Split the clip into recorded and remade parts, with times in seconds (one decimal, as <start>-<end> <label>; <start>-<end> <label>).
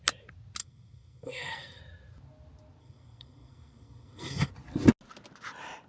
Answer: 0.0-0.6 recorded; 0.6-1.8 remade; 1.8-2.8 recorded; 2.8-4.5 remade; 4.5-5.9 recorded